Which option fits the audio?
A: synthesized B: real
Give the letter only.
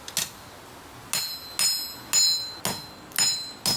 B